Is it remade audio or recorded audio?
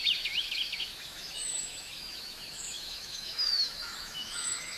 remade